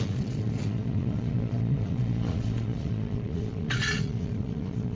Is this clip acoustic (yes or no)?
no